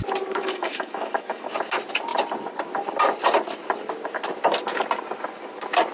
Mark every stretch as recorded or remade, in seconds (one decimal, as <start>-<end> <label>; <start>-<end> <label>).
0.0-0.4 recorded; 0.4-1.5 remade; 1.5-5.9 recorded